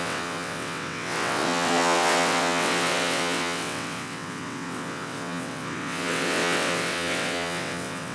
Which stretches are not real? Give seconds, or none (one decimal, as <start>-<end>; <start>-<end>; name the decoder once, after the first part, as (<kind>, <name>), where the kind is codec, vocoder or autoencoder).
0.0-8.1 (vocoder, WaveNeXt)